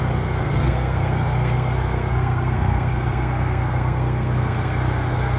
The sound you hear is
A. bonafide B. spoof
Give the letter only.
B